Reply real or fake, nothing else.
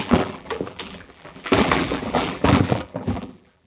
fake